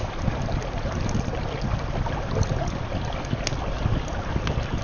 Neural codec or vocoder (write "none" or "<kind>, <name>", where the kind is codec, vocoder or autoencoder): none